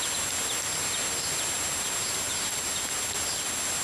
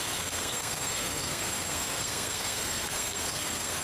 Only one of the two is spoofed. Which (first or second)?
second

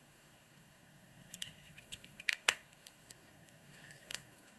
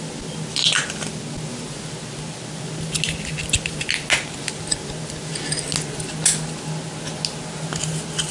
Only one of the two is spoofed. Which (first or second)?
first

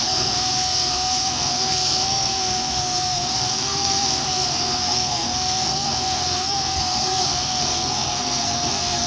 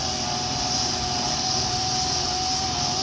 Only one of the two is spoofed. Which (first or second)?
first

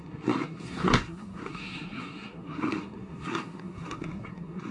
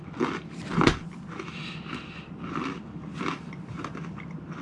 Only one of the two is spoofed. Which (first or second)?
first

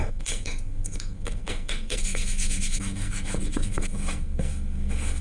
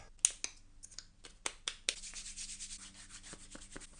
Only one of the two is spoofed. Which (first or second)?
first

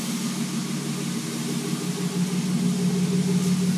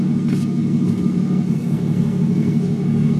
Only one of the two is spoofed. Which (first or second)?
second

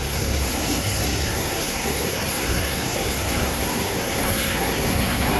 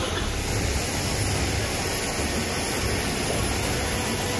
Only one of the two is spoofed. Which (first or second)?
first